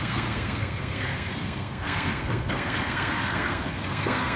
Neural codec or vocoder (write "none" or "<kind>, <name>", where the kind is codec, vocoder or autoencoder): codec, SNAC